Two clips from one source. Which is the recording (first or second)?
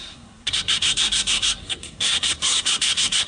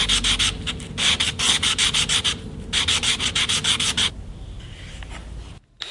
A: second